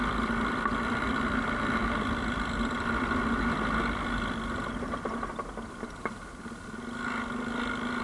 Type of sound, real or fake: real